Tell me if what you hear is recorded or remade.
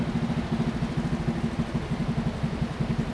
recorded